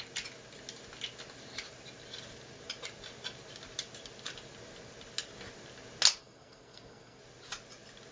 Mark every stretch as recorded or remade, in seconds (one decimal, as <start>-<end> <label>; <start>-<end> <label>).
0.0-6.2 recorded; 6.2-7.2 remade; 7.2-8.1 recorded